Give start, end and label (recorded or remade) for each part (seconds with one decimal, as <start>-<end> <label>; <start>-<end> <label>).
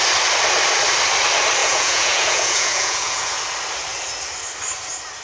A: 0.0-1.6 recorded; 1.6-3.4 remade; 3.4-5.2 recorded